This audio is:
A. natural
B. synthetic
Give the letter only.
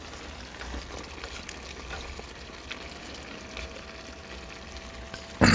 A